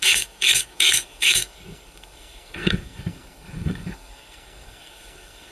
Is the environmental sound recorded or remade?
remade